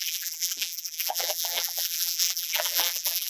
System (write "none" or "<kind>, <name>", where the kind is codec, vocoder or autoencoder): vocoder, BigVGAN v2